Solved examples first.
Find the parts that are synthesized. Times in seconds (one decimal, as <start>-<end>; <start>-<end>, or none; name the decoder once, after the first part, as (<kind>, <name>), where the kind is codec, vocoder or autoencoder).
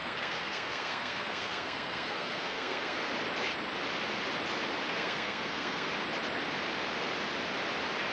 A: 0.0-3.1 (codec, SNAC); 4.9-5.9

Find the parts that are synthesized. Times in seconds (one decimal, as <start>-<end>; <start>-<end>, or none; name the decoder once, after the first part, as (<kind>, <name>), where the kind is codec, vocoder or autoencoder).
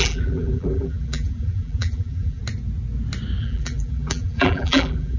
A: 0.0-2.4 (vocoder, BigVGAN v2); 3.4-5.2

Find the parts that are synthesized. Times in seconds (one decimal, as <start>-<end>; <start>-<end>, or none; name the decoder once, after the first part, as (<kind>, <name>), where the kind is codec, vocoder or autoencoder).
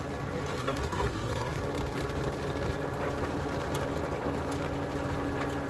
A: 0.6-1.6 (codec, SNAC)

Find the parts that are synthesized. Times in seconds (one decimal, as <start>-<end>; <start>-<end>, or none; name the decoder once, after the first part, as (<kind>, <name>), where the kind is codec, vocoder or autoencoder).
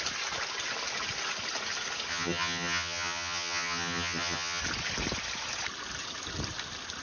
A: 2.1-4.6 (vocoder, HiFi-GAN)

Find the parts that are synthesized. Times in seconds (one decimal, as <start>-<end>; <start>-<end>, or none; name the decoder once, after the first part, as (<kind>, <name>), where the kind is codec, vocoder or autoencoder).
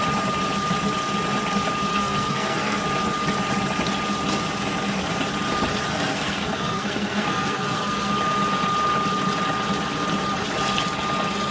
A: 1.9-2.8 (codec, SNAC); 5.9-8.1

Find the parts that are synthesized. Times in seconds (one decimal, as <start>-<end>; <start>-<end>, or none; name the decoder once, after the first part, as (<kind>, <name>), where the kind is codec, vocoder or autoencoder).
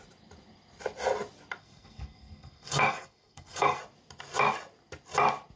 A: 1.6-3.8 (codec, SNAC)